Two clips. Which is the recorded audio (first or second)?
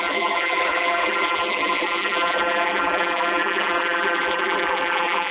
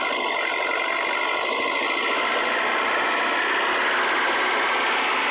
second